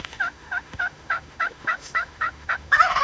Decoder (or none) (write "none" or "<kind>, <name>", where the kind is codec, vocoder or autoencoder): autoencoder, DAC-VAE